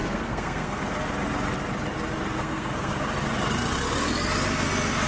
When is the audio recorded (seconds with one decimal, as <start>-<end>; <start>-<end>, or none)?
0.8-2.4; 2.9-5.1